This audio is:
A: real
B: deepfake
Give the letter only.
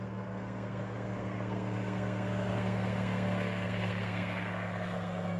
B